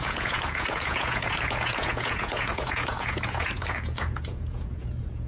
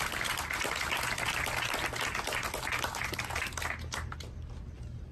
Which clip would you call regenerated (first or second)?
first